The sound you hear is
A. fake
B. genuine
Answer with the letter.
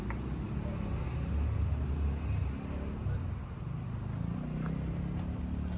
B